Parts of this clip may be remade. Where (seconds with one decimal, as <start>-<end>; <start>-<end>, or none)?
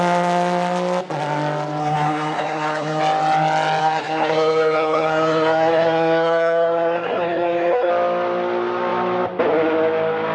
1.8-3.0; 3.8-7.9